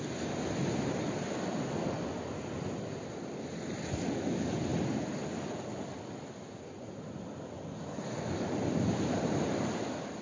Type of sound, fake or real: real